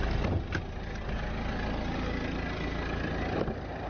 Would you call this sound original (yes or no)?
yes